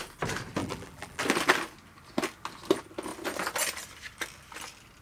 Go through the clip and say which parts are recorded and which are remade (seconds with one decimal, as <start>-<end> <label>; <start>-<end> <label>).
0.0-0.6 recorded; 0.6-1.2 remade; 1.2-5.0 recorded